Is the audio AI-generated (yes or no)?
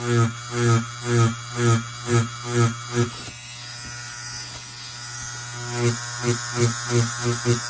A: no